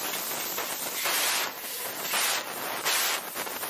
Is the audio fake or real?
real